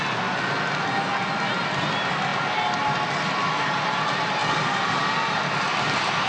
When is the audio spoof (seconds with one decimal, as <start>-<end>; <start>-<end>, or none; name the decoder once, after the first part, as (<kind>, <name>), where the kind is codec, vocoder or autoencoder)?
none

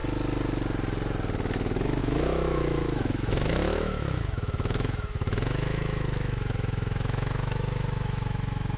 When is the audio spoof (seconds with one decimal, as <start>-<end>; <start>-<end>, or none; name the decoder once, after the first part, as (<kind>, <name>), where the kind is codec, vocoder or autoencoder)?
2.0-8.8 (autoencoder, DAC-VAE)

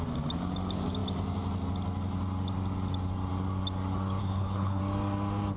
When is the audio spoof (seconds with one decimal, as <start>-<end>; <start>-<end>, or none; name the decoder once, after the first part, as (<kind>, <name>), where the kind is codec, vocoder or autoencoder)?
4.2-4.8 (codec, HILCodec)

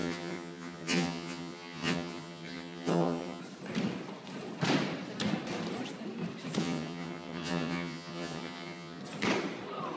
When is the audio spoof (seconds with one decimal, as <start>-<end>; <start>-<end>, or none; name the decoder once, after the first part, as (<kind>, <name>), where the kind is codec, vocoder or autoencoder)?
0.0-3.4 (vocoder, HiFi-GAN); 6.6-9.0